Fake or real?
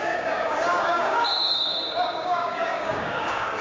fake